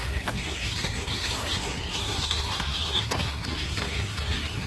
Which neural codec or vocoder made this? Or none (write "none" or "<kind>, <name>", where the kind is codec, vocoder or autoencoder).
codec, SNAC